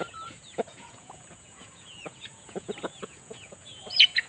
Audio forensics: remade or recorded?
remade